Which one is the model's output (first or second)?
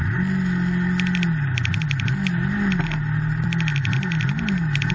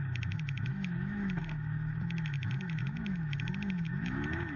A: second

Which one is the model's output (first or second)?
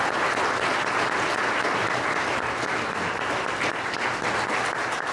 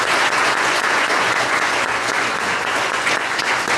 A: second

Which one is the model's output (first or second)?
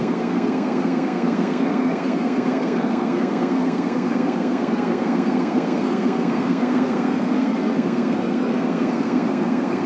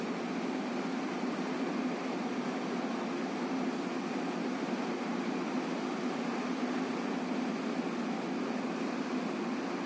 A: first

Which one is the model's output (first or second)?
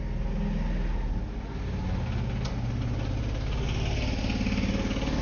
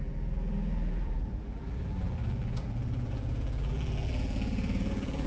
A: second